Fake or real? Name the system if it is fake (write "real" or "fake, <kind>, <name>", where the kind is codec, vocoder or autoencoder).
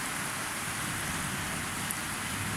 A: real